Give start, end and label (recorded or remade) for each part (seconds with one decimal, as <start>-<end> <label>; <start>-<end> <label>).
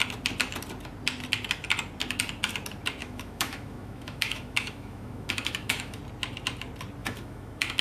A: 0.0-3.0 recorded; 3.0-6.0 remade; 6.0-7.0 recorded; 7.0-7.8 remade